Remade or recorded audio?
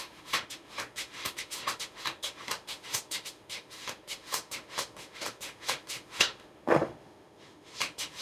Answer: remade